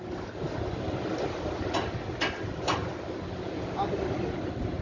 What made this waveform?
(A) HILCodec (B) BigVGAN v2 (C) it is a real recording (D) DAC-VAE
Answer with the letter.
C